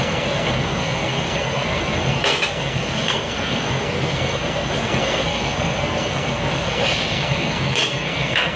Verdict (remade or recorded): remade